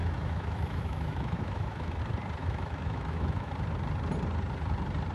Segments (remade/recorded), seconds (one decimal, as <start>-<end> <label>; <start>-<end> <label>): 0.0-2.0 remade; 2.0-2.4 recorded; 2.4-3.5 remade; 3.5-5.1 recorded